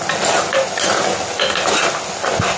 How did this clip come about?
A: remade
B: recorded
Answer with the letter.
B